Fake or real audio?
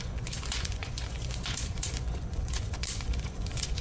fake